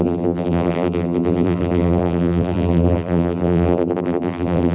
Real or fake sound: fake